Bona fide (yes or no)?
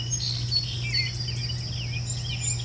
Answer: yes